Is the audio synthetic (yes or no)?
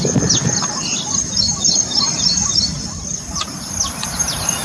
no